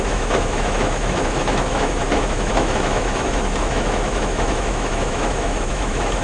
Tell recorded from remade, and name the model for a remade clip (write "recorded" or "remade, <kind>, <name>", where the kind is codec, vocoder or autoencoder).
remade, autoencoder, DAC-VAE